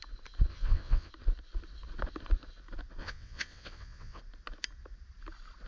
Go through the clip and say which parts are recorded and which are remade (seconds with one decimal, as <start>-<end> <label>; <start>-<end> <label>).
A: 0.0-0.5 recorded; 0.5-1.1 remade; 1.1-3.0 recorded; 3.0-4.2 remade; 4.2-5.7 recorded